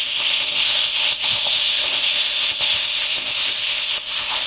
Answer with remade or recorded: remade